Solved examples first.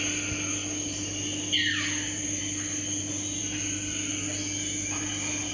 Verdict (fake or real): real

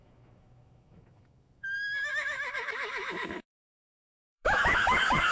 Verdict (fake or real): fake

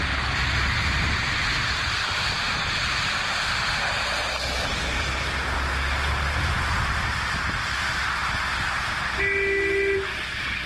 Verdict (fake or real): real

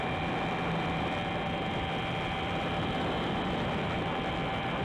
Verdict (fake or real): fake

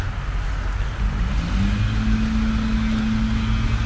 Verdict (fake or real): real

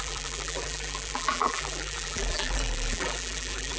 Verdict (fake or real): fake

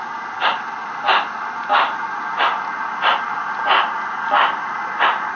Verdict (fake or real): real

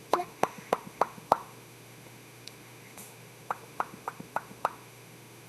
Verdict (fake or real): fake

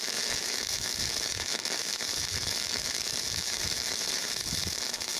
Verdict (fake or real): fake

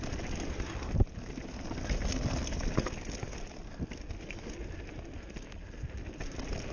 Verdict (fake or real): real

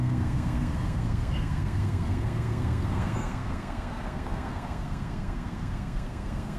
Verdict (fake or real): fake